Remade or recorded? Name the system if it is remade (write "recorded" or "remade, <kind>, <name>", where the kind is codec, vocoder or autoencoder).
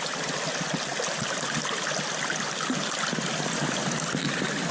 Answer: recorded